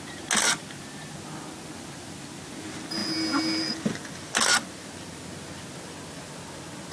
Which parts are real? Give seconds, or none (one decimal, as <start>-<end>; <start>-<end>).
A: 0.0-6.9